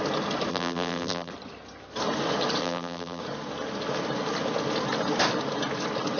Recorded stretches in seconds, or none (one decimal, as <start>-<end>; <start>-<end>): 0.0-0.5; 1.3-2.6; 3.2-6.2